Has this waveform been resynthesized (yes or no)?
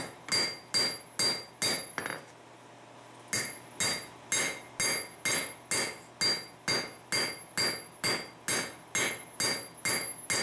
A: no